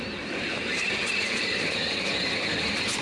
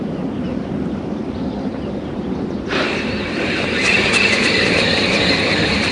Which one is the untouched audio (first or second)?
first